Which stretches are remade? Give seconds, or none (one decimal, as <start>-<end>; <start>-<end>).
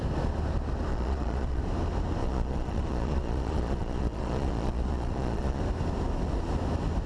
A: 0.9-1.6; 2.2-5.6